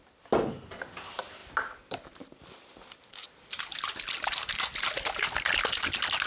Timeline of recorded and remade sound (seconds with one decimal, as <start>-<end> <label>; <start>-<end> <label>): 0.0-6.3 recorded